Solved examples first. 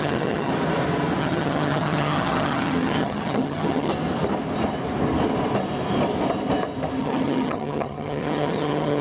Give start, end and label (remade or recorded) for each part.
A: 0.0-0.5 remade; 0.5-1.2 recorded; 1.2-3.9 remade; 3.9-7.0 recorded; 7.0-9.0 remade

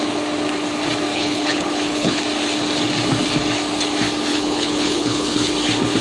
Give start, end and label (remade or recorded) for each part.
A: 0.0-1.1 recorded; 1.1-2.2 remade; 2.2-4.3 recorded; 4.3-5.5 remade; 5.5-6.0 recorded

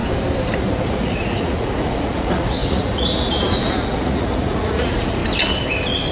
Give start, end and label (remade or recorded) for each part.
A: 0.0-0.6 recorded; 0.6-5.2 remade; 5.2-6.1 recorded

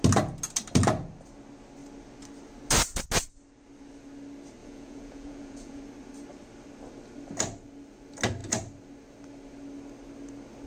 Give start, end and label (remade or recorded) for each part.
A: 0.0-4.6 recorded; 4.6-5.8 remade; 5.8-10.7 recorded

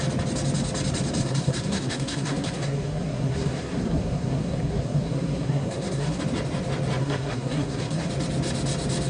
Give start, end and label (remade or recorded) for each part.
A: 0.0-1.2 recorded; 1.2-6.2 remade; 6.2-7.0 recorded; 7.0-8.1 remade; 8.1-9.1 recorded

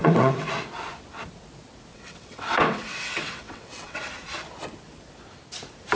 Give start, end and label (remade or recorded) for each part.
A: 0.0-0.5 remade; 0.5-1.9 recorded; 1.9-4.1 remade; 4.1-6.0 recorded

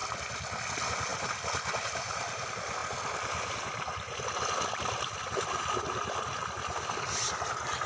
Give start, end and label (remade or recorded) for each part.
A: 0.0-7.9 recorded